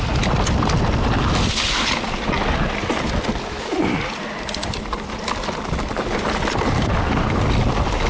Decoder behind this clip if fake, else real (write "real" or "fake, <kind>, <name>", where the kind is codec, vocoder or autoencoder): real